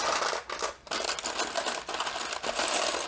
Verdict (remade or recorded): recorded